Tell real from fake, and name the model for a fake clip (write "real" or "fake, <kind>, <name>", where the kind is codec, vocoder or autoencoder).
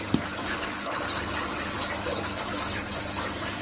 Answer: fake, codec, DAC